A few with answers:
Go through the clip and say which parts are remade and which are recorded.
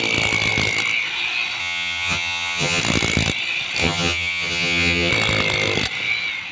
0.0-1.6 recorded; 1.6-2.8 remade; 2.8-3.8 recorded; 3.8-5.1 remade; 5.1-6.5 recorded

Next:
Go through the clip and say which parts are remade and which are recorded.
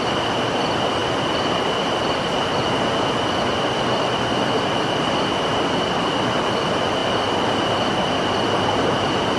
0.0-9.4 recorded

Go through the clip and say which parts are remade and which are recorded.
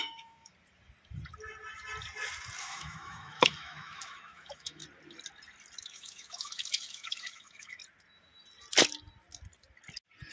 0.0-0.5 remade; 0.5-2.6 recorded; 2.6-4.8 remade; 4.8-5.8 recorded; 5.8-7.8 remade; 7.8-10.3 recorded